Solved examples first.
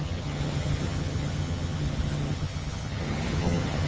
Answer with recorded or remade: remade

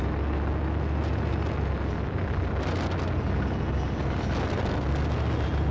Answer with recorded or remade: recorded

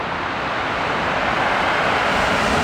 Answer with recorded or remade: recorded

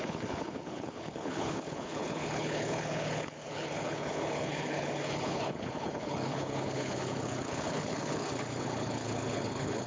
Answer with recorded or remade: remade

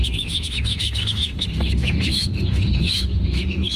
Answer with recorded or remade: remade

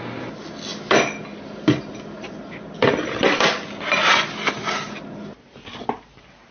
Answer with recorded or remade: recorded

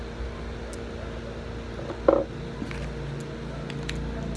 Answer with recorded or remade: recorded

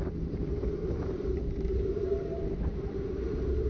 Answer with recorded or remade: remade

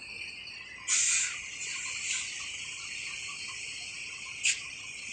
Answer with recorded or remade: recorded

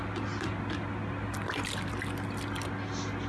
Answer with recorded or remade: recorded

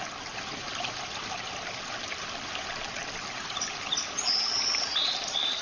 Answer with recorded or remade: recorded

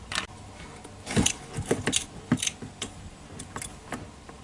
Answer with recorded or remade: recorded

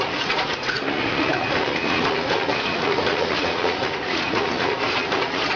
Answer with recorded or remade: remade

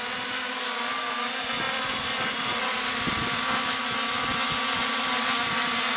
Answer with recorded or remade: recorded